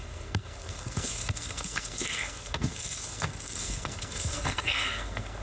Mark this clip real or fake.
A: fake